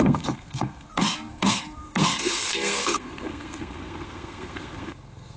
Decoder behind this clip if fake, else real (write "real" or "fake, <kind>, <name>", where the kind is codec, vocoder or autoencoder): fake, codec, SNAC